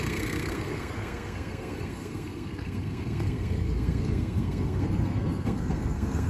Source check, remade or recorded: remade